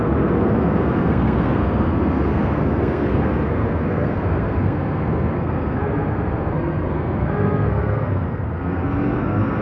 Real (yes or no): no